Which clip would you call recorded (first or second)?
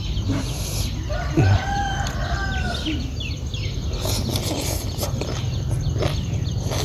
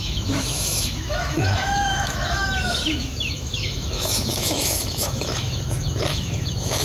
first